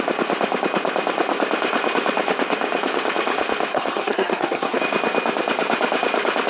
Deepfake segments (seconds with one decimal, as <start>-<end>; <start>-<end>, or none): 3.7-4.8